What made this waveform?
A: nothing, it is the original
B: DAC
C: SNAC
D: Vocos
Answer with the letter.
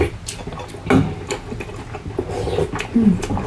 A